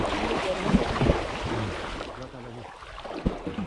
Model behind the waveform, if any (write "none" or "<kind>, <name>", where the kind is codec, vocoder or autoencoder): none